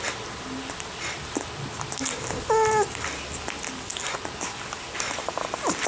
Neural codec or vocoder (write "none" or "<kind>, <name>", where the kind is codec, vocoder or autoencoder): none